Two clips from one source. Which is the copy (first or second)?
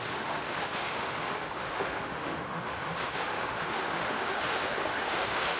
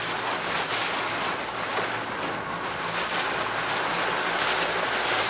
first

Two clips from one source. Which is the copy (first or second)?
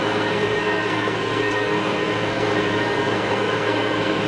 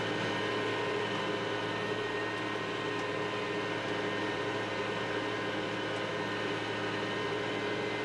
first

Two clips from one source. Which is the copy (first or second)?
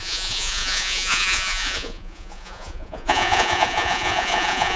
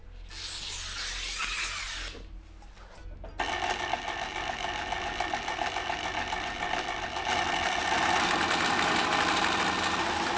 first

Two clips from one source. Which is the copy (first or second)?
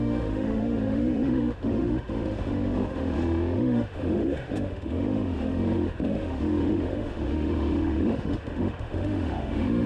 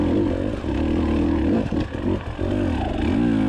first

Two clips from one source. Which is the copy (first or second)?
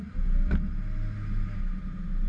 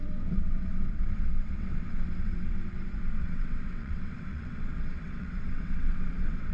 second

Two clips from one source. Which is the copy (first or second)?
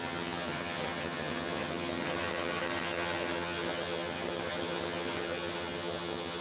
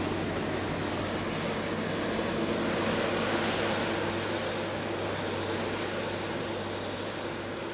first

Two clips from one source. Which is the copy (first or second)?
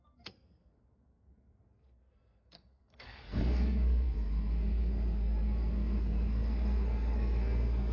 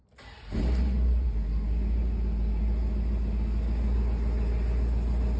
first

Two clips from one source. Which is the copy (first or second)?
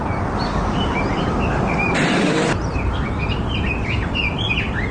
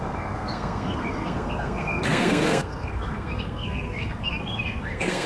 second